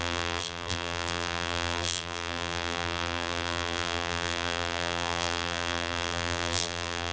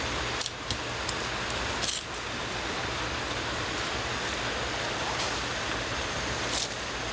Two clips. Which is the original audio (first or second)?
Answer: second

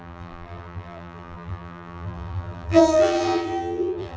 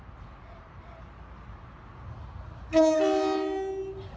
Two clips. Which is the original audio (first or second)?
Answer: second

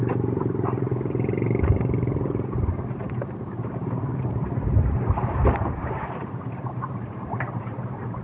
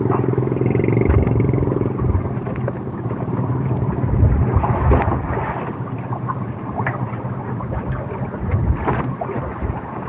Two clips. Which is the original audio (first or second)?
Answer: second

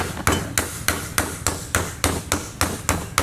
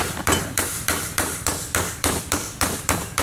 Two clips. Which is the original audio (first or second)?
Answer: first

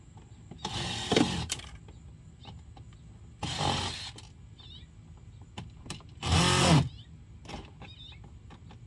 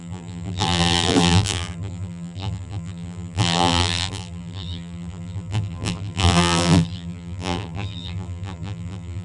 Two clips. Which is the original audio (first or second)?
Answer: first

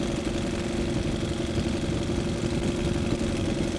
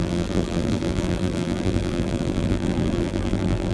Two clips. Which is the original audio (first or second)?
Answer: first